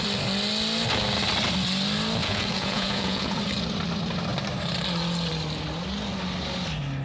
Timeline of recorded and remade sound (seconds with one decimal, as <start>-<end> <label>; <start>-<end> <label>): 0.0-2.2 recorded; 2.2-3.4 remade; 3.4-7.0 recorded